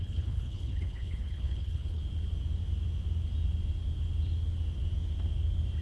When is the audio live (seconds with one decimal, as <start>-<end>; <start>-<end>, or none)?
2.0-5.8